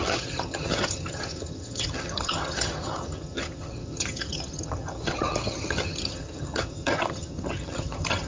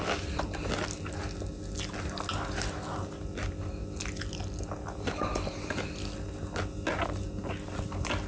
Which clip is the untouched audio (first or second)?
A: second